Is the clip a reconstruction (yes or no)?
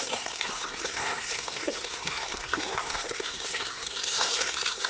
yes